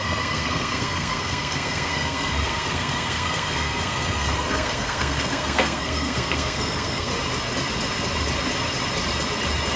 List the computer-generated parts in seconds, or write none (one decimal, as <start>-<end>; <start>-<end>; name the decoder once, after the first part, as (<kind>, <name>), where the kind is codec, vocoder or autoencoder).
0.0-7.1 (codec, SNAC)